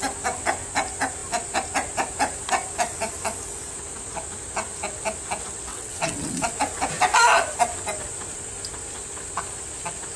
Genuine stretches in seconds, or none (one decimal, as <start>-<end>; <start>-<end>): 0.0-5.7; 6.5-10.2